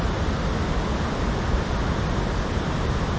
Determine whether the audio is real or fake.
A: fake